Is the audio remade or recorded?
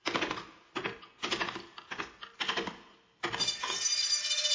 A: recorded